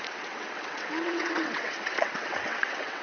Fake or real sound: fake